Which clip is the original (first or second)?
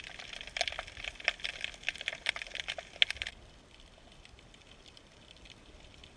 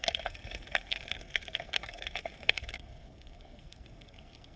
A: first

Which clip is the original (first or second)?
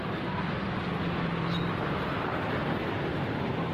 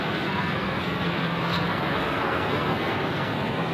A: first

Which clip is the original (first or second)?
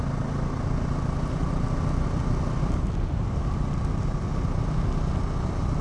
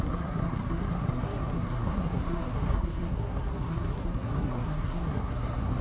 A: first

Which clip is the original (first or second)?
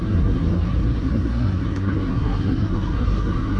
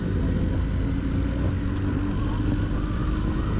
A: second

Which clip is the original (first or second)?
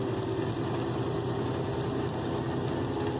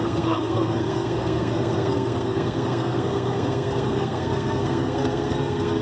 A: first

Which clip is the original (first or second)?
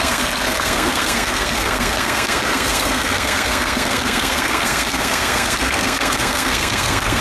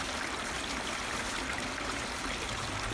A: second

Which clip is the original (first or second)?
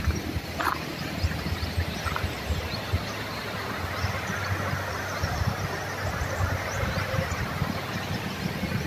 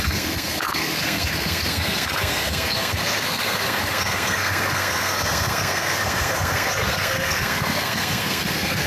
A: first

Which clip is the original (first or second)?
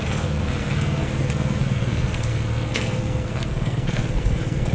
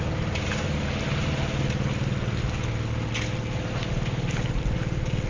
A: second